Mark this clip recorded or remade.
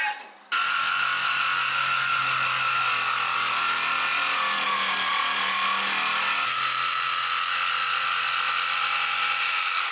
recorded